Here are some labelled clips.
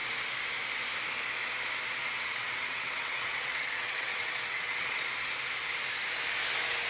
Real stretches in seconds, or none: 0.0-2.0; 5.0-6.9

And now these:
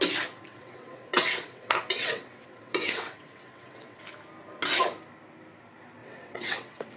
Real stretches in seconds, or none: 0.0-0.5; 4.0-6.0